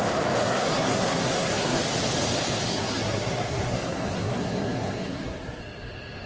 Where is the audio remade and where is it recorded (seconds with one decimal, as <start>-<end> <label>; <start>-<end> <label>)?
0.0-0.4 recorded; 0.4-1.8 remade; 1.8-2.7 recorded; 2.7-5.6 remade; 5.6-6.3 recorded